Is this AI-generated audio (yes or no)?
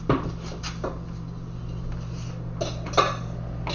no